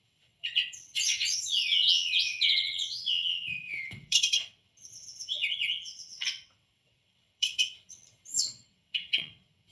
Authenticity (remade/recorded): remade